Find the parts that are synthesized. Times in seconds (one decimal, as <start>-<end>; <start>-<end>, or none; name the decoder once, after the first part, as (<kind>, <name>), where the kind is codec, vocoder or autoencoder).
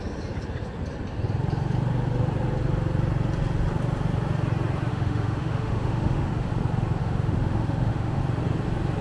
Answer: 4.9-6.5 (autoencoder, DAC-VAE); 7.0-8.2